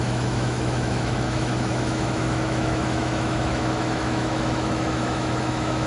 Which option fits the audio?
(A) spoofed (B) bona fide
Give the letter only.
A